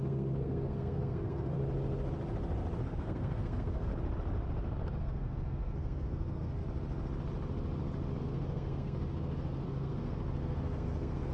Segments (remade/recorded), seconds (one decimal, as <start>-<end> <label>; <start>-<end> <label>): 0.0-1.6 remade; 1.6-2.8 recorded; 2.8-3.9 remade; 3.9-4.9 recorded; 4.9-6.6 remade; 6.6-8.2 recorded; 8.2-11.3 remade